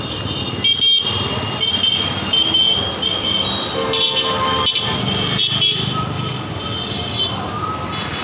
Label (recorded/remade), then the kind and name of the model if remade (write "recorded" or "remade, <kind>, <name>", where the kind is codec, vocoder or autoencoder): recorded